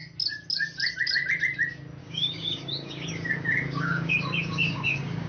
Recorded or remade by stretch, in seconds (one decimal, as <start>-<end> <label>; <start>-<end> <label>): 0.0-2.0 recorded; 2.0-5.3 remade